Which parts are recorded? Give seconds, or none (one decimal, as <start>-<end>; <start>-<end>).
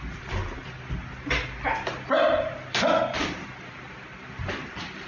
0.0-5.1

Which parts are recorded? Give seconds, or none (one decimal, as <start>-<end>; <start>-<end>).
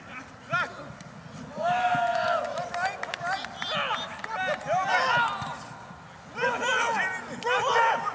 0.0-8.1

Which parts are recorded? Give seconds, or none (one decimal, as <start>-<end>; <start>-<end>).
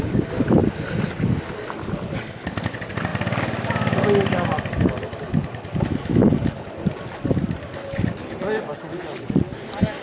0.0-10.0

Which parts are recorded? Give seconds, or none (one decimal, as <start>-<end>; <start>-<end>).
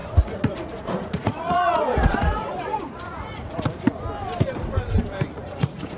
3.6-5.3